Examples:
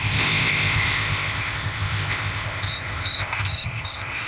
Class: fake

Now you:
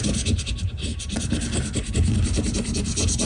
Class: real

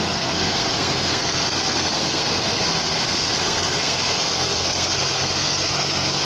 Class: fake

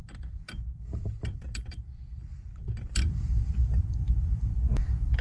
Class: fake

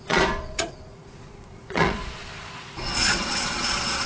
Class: fake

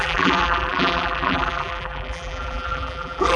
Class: fake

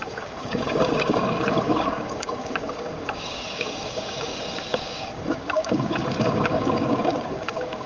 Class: fake